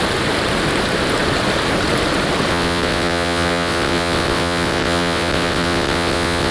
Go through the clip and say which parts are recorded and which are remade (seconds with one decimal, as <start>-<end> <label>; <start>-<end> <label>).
0.0-2.5 recorded; 2.5-6.5 remade